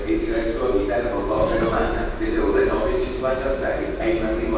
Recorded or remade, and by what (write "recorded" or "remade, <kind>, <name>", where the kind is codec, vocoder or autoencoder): remade, autoencoder, DAC-VAE